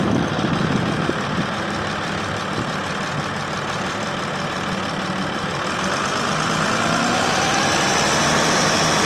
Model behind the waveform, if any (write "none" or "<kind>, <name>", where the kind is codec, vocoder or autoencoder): none